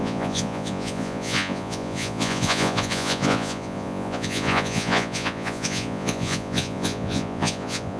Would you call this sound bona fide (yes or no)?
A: no